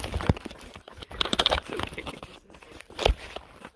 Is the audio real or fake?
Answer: fake